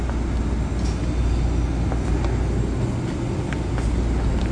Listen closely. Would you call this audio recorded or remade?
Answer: recorded